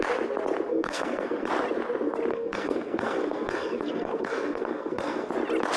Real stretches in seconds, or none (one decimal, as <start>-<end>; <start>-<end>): 0.0-0.7; 1.5-2.3; 5.3-5.8